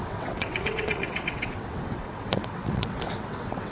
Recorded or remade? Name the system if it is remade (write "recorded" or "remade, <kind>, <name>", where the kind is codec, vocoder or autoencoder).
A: remade, vocoder, WaveNeXt